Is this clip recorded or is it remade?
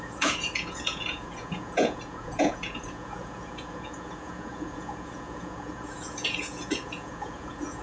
remade